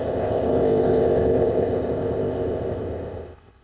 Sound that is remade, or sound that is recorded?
remade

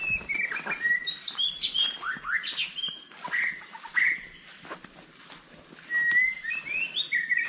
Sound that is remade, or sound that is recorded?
recorded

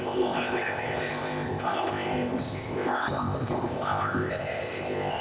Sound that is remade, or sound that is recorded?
remade